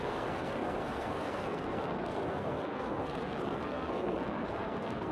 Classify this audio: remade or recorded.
remade